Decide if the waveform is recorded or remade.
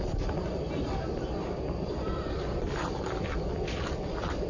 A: recorded